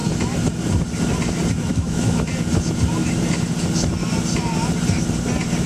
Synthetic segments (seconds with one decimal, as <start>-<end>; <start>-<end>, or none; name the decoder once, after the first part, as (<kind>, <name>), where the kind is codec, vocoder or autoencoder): 1.7-2.3 (autoencoder, DAC-VAE)